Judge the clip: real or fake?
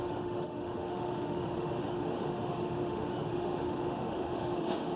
fake